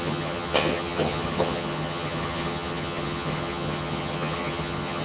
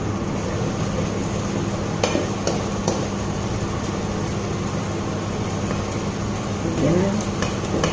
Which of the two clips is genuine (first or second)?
second